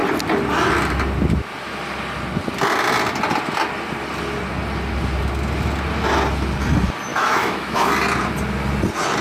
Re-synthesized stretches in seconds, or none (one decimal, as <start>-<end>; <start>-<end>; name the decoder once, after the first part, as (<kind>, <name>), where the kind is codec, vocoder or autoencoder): 7.1-7.9 (autoencoder, DAC-VAE)